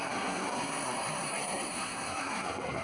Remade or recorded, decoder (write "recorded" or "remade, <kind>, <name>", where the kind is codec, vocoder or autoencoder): remade, codec, SNAC